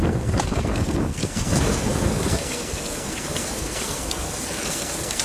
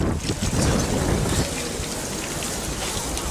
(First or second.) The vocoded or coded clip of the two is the first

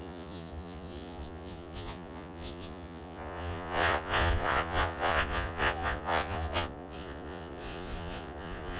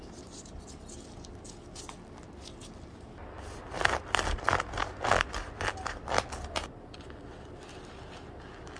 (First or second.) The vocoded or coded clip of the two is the first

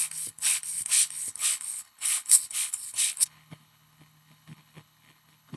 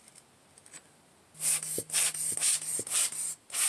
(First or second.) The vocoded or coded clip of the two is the first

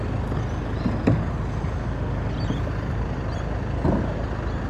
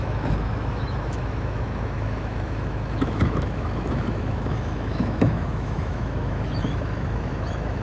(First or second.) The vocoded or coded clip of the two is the second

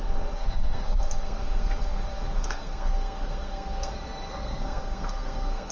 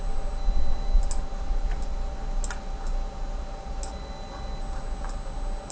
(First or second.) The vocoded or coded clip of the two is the first